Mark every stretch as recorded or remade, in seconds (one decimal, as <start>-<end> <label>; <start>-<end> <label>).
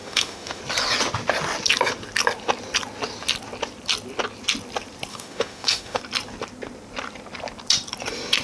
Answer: 0.0-0.6 remade; 0.6-5.1 recorded; 5.1-6.0 remade; 6.0-8.4 recorded